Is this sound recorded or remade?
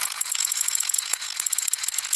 remade